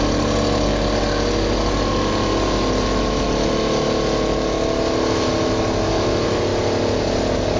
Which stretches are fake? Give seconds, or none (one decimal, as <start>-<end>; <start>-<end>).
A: none